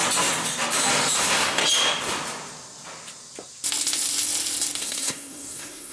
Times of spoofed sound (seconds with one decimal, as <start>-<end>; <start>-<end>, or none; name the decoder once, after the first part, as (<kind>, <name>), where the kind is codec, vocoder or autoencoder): 1.2-1.6 (codec, SNAC); 4.8-5.9